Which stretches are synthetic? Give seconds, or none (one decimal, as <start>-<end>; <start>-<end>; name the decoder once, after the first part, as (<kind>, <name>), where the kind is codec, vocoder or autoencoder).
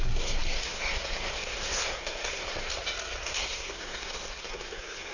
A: 0.0-2.7 (codec, SNAC); 3.2-5.1